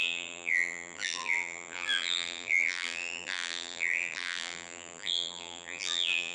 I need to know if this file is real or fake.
fake